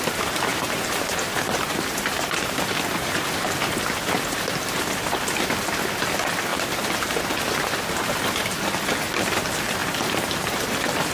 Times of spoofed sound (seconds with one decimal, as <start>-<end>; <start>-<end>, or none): 0.5-3.5; 6.5-7.2; 9.8-10.6